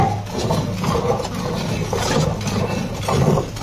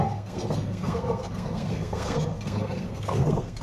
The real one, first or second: first